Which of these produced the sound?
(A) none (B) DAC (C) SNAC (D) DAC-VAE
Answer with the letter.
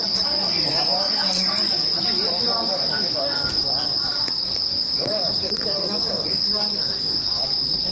B